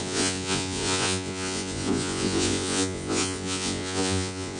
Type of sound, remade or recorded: remade